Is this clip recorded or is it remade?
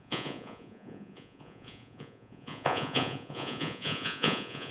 remade